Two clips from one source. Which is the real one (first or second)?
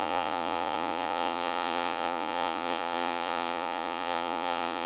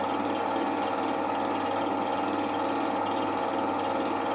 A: second